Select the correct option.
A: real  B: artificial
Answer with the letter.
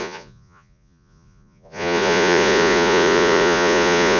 B